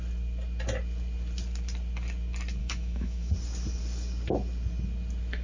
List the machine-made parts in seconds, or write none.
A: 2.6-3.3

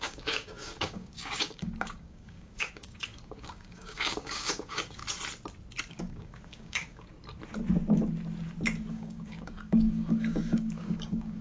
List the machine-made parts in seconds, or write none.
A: 0.0-5.0; 5.9-7.1; 8.9-11.4

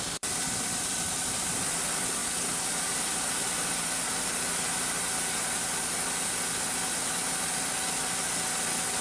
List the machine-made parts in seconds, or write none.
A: 0.0-2.2; 7.4-9.0

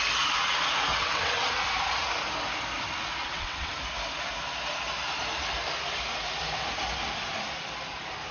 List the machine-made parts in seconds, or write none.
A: 0.9-1.5; 3.2-3.7

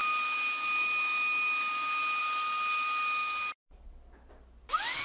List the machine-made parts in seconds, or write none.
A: none

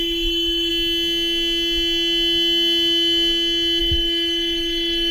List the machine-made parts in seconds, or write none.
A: 0.0-0.7; 3.8-5.1

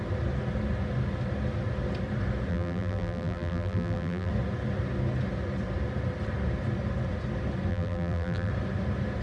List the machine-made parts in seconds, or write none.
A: 2.5-4.3; 7.7-8.5

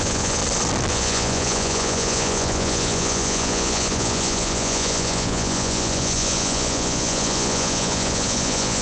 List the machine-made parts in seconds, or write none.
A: 0.0-0.4; 0.9-8.8